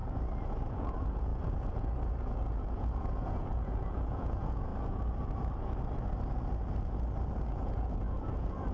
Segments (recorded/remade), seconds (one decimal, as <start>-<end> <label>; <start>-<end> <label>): 0.0-0.7 recorded; 0.7-4.7 remade; 4.7-7.5 recorded; 7.5-8.7 remade